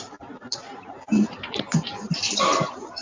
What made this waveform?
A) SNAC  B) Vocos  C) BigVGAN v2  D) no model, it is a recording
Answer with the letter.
C